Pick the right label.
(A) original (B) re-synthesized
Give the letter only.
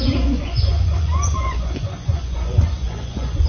B